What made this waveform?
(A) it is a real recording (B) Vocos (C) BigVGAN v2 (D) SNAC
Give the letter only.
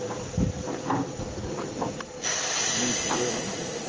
A